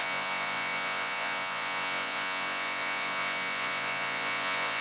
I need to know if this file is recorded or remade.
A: remade